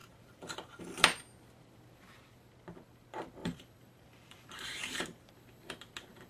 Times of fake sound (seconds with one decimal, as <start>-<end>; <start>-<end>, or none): 0.0-0.8; 3.4-5.3

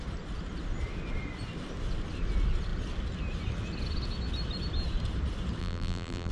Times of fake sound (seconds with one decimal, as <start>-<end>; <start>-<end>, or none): 5.6-6.3

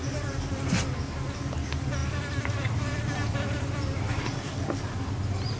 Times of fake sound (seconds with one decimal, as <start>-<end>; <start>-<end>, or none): 2.0-4.2

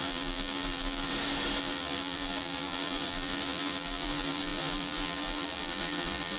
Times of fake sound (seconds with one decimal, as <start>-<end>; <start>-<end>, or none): 0.0-1.1; 1.6-6.4

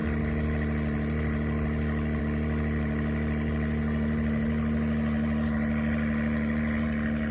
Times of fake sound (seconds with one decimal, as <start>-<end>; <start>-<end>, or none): none

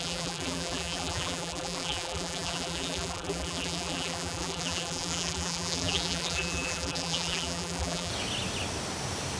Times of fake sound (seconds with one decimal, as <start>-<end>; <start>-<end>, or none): 0.0-8.1

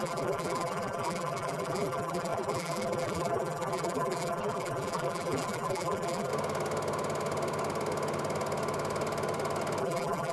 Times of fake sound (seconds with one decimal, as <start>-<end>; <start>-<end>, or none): 0.0-6.3; 9.8-10.3